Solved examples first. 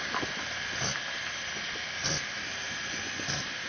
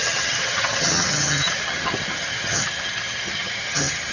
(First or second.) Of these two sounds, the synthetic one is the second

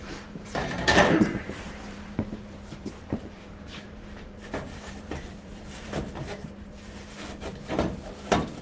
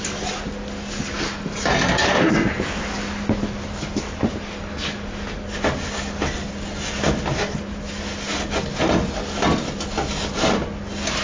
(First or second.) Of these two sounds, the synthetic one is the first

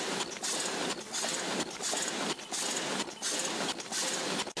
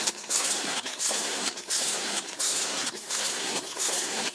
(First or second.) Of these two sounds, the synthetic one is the second